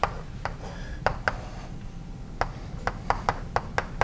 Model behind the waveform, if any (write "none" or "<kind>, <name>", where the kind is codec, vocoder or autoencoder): none